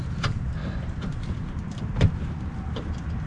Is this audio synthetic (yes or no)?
no